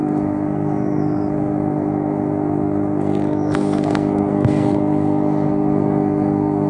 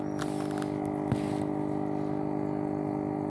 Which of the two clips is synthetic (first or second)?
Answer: first